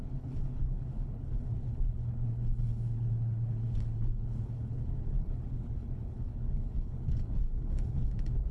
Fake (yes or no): yes